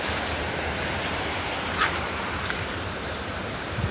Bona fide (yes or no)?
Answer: no